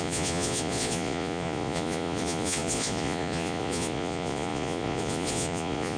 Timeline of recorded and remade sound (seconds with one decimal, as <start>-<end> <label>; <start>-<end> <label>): 0.0-6.0 remade